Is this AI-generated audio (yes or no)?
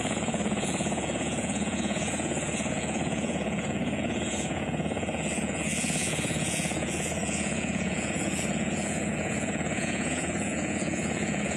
yes